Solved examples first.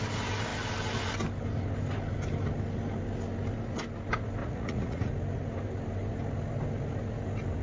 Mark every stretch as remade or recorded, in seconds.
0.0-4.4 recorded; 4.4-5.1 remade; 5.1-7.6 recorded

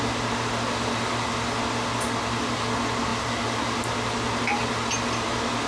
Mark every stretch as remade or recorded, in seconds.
0.0-5.7 recorded

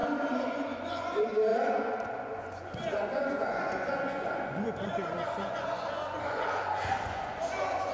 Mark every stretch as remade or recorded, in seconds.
0.0-0.5 recorded; 0.5-7.9 remade

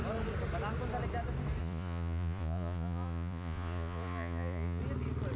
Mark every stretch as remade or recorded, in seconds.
0.0-1.6 recorded; 1.6-4.8 remade; 4.8-5.4 recorded

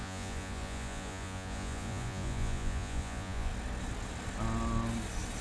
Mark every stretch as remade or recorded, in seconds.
0.0-3.5 remade; 3.5-5.4 recorded

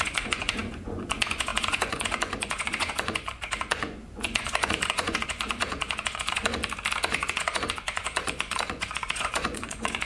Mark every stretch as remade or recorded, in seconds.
0.0-6.6 remade; 6.6-7.1 recorded; 7.1-10.1 remade

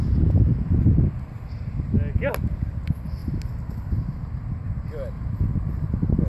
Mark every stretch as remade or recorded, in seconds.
0.0-6.3 recorded

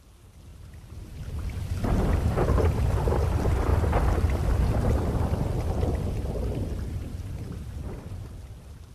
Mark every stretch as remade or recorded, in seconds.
0.0-8.9 recorded